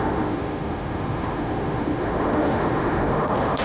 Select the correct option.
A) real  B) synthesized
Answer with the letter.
B